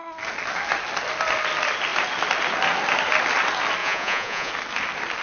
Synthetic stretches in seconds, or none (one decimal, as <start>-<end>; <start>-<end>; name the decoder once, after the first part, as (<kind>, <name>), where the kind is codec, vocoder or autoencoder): 3.8-4.5 (vocoder, Vocos)